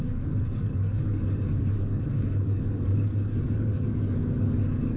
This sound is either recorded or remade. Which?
remade